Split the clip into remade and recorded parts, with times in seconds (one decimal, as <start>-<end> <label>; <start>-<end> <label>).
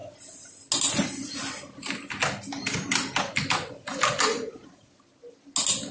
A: 0.0-4.3 recorded; 4.3-4.9 remade; 4.9-5.9 recorded